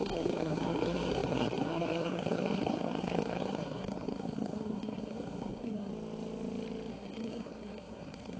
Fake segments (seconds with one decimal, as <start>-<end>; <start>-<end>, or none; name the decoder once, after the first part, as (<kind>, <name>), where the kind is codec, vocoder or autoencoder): 0.0-5.9 (codec, SNAC); 6.9-8.4